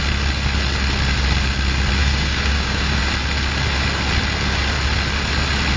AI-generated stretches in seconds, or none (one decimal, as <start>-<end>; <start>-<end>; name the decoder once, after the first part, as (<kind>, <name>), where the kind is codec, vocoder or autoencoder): 2.0-3.0 (codec, DAC)